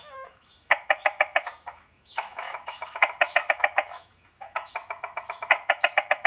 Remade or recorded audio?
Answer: remade